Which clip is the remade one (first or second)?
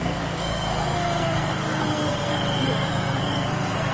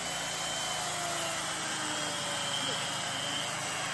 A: first